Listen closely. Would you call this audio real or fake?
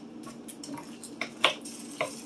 real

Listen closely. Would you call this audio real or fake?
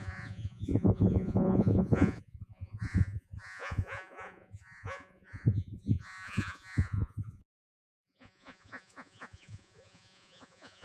fake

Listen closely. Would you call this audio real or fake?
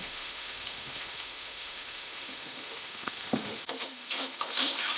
fake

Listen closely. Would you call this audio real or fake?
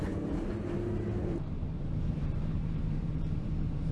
fake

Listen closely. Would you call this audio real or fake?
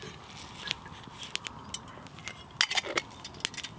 real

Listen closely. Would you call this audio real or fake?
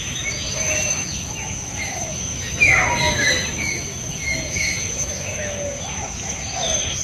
fake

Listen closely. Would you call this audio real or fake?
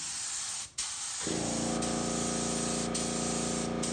real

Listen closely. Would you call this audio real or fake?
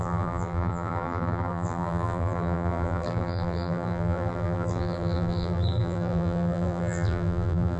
fake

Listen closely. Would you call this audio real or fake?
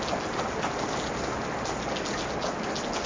real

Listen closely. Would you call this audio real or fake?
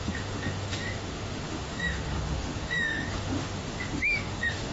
fake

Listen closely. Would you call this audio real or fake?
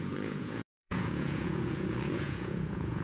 fake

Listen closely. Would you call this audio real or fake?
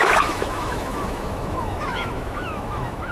fake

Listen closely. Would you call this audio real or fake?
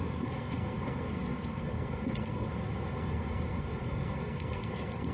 fake